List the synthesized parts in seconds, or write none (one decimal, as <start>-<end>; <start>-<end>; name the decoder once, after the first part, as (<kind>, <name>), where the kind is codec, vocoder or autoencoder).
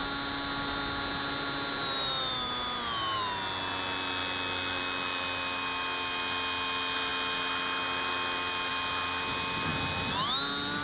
none